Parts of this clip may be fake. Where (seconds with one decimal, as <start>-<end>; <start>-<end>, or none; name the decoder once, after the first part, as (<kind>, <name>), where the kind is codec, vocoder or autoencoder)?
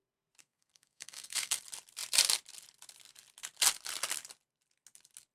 0.4-1.6 (codec, SNAC)